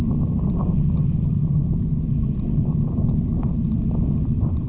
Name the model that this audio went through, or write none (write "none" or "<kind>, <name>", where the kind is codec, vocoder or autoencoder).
none